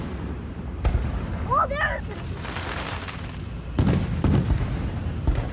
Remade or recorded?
recorded